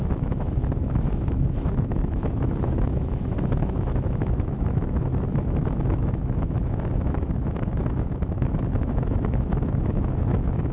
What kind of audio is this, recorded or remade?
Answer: remade